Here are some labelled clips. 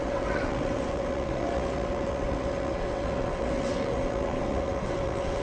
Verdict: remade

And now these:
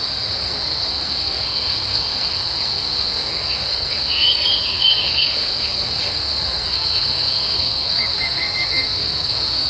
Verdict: remade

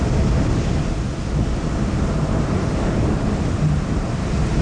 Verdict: recorded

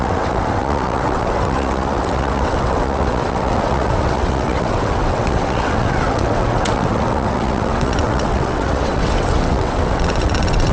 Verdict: remade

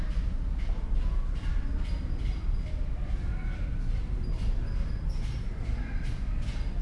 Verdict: recorded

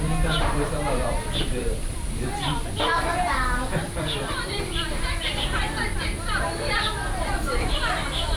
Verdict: remade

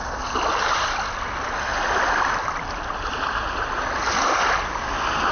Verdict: recorded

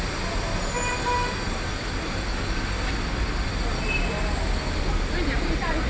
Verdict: recorded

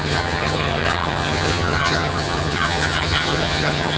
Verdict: remade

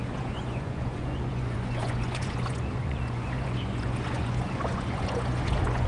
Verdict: remade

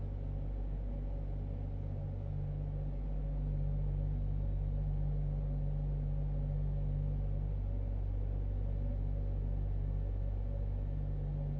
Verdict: recorded